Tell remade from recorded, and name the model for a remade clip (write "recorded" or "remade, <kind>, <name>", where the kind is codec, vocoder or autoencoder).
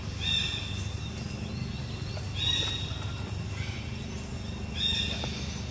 recorded